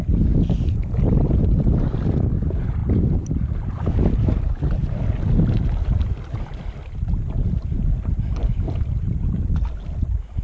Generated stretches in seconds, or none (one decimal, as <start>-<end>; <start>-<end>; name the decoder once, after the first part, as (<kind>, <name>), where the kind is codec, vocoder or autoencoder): none